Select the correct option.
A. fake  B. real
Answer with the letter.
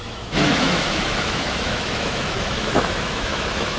A